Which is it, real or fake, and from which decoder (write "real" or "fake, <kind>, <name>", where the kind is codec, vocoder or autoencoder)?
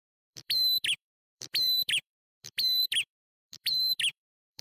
fake, vocoder, BigVGAN v2